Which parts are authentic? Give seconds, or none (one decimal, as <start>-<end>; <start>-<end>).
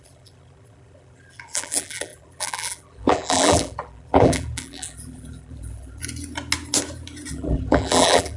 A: 6.0-7.3